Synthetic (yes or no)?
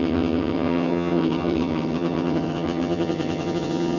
yes